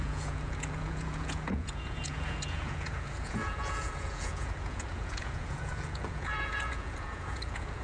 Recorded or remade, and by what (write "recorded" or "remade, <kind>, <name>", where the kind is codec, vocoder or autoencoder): remade, vocoder, Vocos